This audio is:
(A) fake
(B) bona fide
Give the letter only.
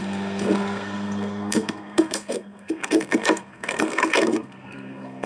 A